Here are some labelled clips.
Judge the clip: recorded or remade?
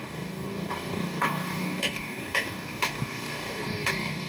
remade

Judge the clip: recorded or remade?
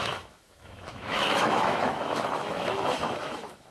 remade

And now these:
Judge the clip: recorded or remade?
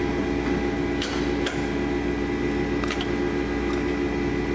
recorded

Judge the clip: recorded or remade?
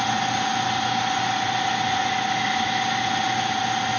recorded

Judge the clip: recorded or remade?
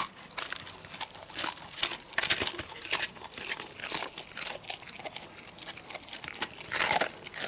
recorded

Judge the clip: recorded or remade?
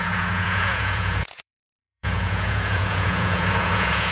remade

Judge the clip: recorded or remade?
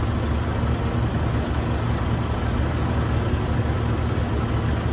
recorded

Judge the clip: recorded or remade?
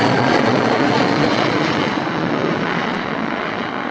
remade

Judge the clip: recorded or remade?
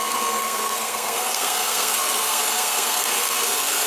remade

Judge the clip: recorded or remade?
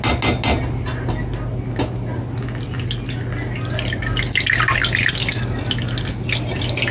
recorded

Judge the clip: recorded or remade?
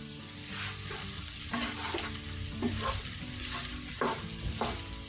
recorded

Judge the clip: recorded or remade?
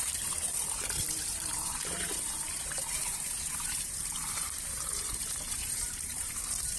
remade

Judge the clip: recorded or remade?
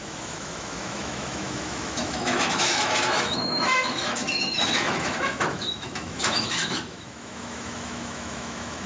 remade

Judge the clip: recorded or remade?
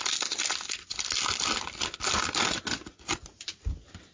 recorded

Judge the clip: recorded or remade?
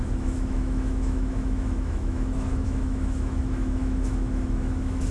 remade